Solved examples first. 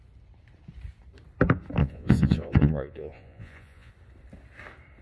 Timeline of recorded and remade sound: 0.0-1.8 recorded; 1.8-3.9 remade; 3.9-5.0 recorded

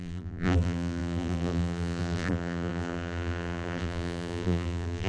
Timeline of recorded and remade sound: 0.0-5.1 remade

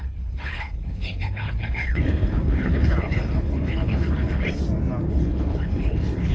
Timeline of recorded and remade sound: 0.0-4.6 remade; 4.6-5.1 recorded; 5.1-6.3 remade

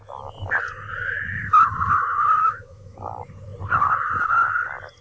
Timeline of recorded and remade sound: 0.0-2.4 recorded; 2.4-3.0 remade; 3.0-5.0 recorded

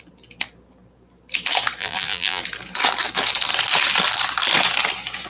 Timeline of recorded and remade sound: 0.0-1.8 recorded; 1.8-2.4 remade; 2.4-5.3 recorded

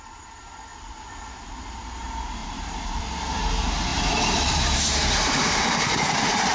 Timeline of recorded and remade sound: 0.0-2.4 recorded; 2.4-3.0 remade; 3.0-3.9 recorded; 3.9-6.0 remade; 6.0-6.5 recorded